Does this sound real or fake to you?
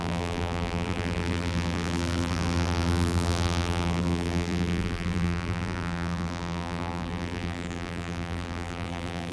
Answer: fake